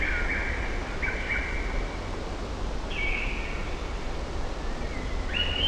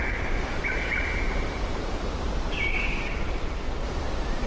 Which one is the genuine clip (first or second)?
first